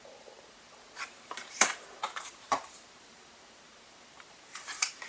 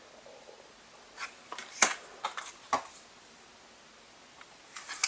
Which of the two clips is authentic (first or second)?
second